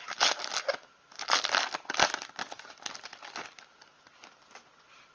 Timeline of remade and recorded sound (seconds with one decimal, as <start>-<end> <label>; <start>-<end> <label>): 0.0-5.1 recorded